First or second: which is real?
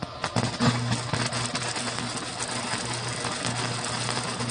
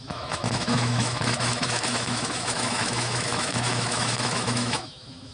first